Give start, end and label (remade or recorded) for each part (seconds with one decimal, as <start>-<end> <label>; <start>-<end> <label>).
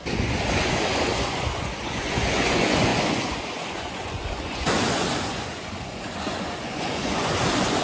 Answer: 0.0-7.8 remade